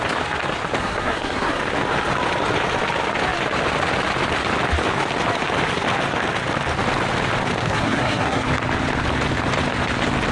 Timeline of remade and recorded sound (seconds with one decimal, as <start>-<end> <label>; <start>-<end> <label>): 0.0-0.8 recorded; 0.8-1.6 remade; 1.6-7.6 recorded; 7.6-8.5 remade; 8.5-10.3 recorded